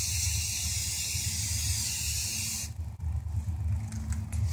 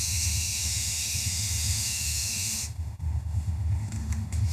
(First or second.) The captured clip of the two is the first